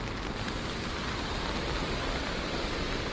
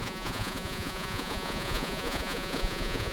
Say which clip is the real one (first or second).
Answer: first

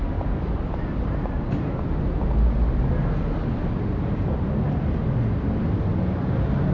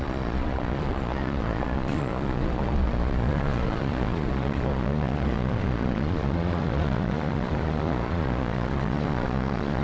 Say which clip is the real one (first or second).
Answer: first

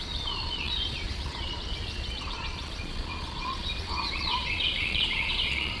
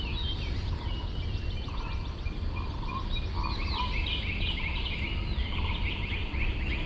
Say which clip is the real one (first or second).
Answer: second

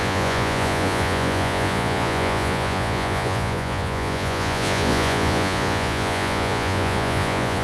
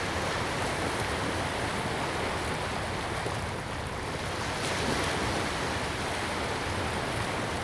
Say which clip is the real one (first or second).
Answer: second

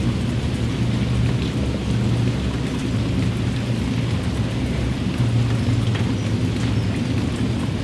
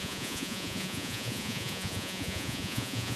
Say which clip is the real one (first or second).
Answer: first